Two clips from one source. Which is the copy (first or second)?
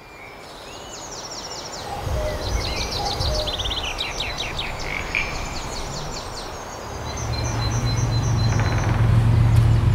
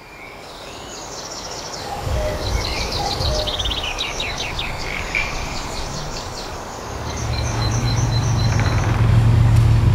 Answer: second